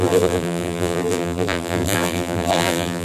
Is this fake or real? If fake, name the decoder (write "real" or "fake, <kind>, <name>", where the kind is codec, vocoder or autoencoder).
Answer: fake, vocoder, BigVGAN v2